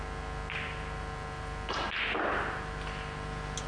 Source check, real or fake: real